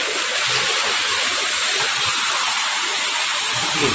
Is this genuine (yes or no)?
yes